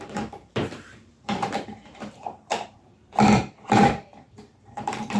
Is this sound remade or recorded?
remade